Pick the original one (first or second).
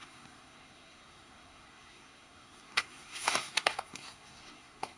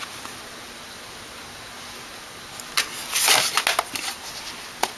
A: second